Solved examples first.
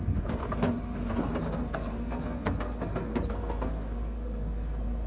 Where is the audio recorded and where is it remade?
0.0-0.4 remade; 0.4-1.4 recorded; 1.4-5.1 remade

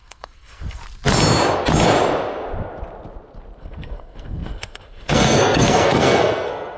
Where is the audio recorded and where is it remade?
0.0-0.8 remade; 0.8-3.6 recorded; 3.6-6.8 remade

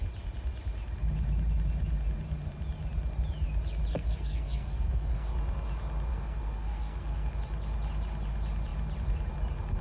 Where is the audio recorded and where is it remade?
0.0-3.9 recorded; 3.9-5.3 remade; 5.3-6.1 recorded; 6.1-7.3 remade; 7.3-9.8 recorded

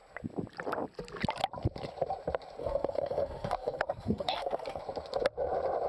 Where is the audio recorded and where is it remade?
0.0-2.6 recorded; 2.6-4.8 remade; 4.8-5.9 recorded

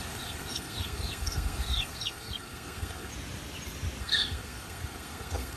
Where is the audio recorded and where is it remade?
0.0-3.1 remade; 3.1-4.0 recorded; 4.0-5.6 remade

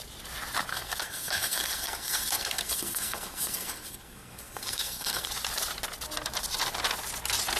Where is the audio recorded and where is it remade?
0.0-0.7 recorded; 0.7-5.3 remade; 5.3-7.6 recorded